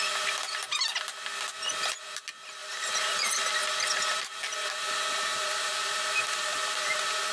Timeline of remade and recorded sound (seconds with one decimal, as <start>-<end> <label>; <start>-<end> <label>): 0.0-2.6 recorded; 2.6-3.4 remade; 3.4-5.3 recorded; 5.3-7.3 remade